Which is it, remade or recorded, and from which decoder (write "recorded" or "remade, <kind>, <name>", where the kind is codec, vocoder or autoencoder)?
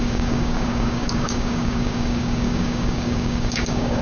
remade, codec, DAC